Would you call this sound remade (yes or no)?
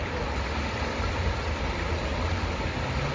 no